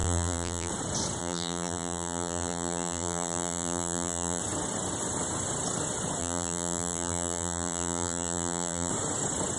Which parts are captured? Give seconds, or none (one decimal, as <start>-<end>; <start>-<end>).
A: 0.7-1.2; 4.4-6.2; 8.9-9.6